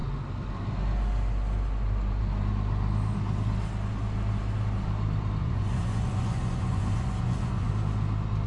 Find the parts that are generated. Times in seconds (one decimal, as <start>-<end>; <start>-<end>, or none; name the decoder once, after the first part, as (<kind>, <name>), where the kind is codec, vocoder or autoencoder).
5.4-7.7 (vocoder, Vocos)